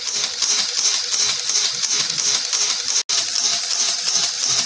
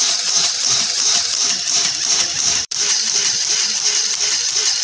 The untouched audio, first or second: first